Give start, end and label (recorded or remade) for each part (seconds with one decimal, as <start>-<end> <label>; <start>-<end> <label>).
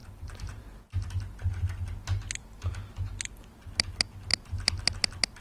0.0-0.8 remade; 0.8-2.4 recorded; 2.4-2.9 remade; 2.9-5.4 recorded